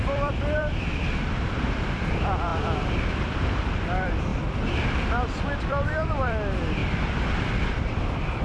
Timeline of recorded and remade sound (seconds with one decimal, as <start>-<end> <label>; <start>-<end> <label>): 0.0-4.3 remade; 4.3-5.6 recorded; 5.6-6.8 remade; 6.8-7.6 recorded; 7.6-8.4 remade